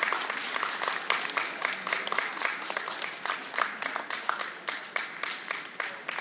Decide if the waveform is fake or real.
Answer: real